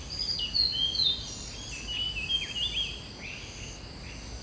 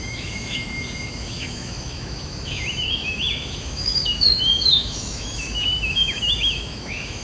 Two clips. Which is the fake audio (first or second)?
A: second